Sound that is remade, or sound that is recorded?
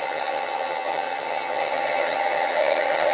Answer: remade